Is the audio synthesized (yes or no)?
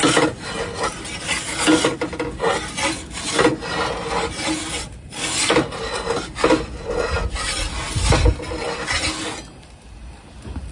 no